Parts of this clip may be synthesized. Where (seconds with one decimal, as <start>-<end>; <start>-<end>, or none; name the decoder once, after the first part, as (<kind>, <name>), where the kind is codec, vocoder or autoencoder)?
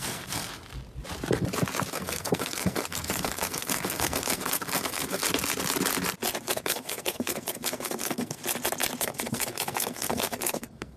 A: 0.0-0.5 (codec, SNAC); 1.9-5.2; 6.4-8.4; 9.0-11.0